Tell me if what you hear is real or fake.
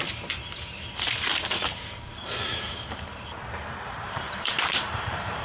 fake